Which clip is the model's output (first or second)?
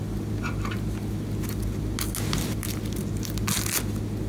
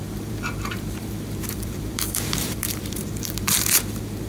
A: second